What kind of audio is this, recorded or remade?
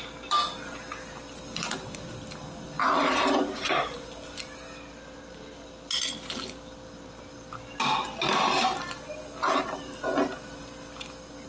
recorded